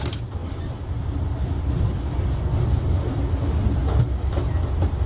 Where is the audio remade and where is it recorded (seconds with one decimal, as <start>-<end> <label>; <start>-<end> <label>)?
0.0-0.4 remade; 0.4-1.4 recorded; 1.4-3.8 remade; 3.8-5.1 recorded